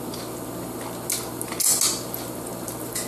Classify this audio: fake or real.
real